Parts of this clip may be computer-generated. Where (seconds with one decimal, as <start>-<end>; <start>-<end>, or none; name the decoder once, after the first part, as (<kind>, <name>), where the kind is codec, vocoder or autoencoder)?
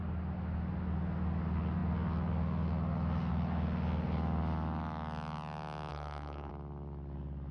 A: 5.9-6.5 (codec, SNAC)